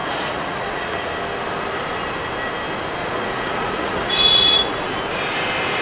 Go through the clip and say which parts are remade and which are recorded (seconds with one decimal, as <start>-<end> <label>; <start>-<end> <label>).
0.0-1.1 remade; 1.1-3.0 recorded; 3.0-5.0 remade; 5.0-5.8 recorded